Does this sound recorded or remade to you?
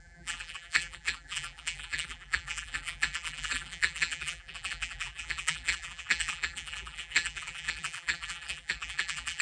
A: remade